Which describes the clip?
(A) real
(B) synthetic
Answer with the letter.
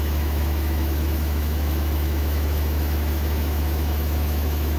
B